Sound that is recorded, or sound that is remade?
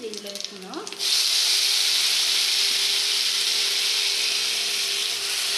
recorded